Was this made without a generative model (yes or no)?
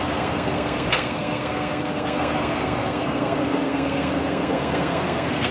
no